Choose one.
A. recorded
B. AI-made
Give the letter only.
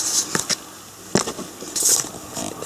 A